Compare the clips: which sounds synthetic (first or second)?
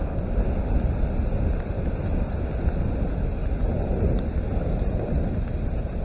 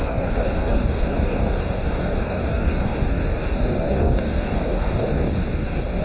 second